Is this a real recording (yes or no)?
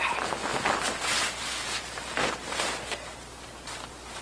yes